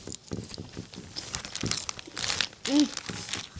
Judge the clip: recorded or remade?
recorded